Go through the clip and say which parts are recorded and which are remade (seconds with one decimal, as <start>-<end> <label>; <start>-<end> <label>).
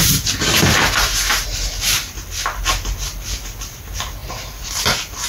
0.0-5.3 recorded